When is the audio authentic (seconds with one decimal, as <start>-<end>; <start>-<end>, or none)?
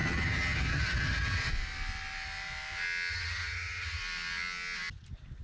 1.5-3.1; 4.0-5.4